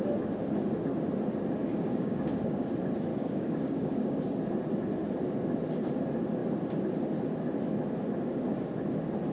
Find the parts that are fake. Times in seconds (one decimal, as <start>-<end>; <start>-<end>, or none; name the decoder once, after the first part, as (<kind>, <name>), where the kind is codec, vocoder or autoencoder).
1.6-2.7 (codec, DAC); 3.1-4.2